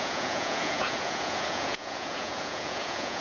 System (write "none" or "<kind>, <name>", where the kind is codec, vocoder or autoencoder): vocoder, Vocos